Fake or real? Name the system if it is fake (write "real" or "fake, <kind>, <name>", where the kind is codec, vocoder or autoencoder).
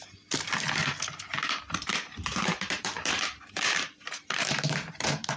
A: fake, vocoder, BigVGAN v2